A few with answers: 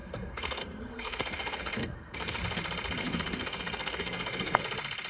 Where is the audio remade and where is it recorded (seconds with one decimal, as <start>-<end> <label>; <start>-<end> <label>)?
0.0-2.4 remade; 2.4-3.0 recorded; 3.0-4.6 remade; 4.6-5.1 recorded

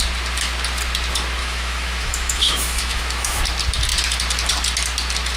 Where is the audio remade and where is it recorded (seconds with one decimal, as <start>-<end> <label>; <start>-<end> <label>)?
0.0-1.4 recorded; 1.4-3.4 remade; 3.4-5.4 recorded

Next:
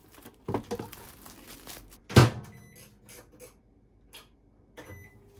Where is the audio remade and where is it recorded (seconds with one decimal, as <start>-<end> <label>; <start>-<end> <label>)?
0.0-0.6 remade; 0.6-5.4 recorded

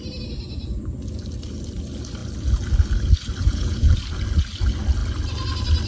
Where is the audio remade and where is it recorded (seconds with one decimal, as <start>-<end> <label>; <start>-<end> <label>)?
0.0-3.4 recorded; 3.4-3.9 remade; 3.9-5.9 recorded

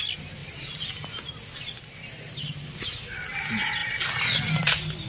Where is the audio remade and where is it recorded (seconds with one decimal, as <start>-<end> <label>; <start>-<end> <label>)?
0.0-5.1 recorded

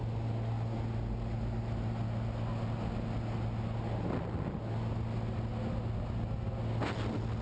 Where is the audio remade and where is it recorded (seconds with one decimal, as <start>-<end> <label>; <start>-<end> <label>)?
0.0-7.4 recorded